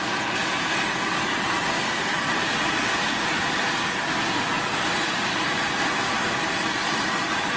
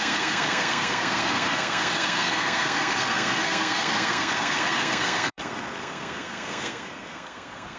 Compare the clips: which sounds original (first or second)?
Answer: first